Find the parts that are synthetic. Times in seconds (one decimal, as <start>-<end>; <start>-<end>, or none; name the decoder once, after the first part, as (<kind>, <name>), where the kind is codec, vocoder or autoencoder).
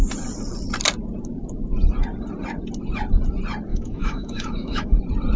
3.7-5.0 (autoencoder, DAC-VAE)